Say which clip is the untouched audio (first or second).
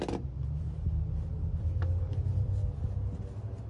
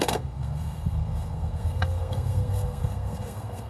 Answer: first